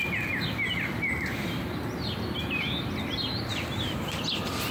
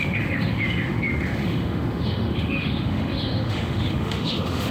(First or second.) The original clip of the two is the first